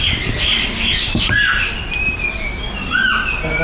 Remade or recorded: recorded